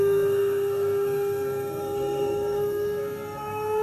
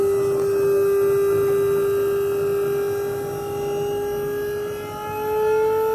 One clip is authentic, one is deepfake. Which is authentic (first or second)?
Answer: second